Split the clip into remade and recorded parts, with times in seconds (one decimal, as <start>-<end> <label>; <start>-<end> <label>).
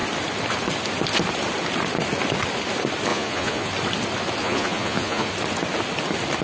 0.0-3.1 recorded; 3.1-3.7 remade; 3.7-4.4 recorded; 4.4-5.3 remade; 5.3-6.4 recorded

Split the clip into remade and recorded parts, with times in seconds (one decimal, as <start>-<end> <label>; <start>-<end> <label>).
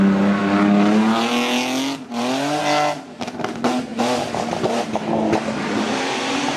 0.0-6.6 recorded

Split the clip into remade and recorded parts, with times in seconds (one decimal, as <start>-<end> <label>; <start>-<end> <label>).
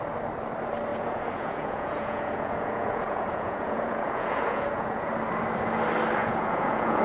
0.0-0.9 recorded; 0.9-5.1 remade; 5.1-6.2 recorded; 6.2-7.0 remade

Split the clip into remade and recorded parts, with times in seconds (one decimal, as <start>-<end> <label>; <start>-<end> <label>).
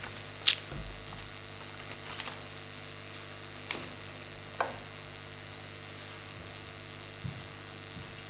0.0-8.3 recorded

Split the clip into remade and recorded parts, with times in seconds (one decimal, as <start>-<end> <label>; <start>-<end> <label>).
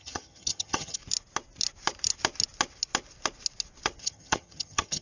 0.0-1.0 remade; 1.0-4.0 recorded; 4.0-5.0 remade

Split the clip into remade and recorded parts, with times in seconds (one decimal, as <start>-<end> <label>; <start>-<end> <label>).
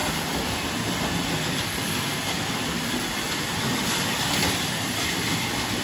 0.0-2.5 recorded; 2.5-5.8 remade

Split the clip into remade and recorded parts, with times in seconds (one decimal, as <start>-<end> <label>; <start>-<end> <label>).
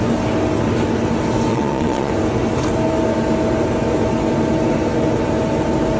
0.0-1.5 recorded; 1.5-2.1 remade; 2.1-6.0 recorded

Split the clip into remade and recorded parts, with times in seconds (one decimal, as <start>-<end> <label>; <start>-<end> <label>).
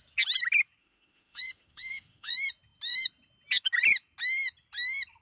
0.0-0.8 recorded; 0.8-2.3 remade; 2.3-5.2 recorded